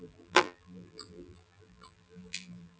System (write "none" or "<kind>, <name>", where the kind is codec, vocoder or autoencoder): vocoder, BigVGAN v2